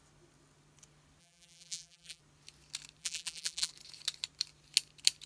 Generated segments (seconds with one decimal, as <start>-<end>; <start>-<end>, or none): 1.2-2.2; 3.0-3.7